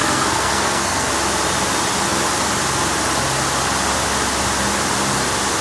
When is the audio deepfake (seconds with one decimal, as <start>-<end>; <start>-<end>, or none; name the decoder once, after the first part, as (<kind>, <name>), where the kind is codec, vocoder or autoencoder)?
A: 0.0-1.1 (codec, SNAC)